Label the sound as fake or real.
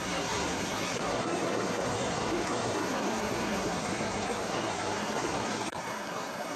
fake